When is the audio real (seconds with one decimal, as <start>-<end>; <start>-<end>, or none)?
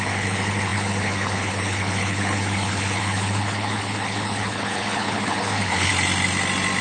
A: 5.9-6.8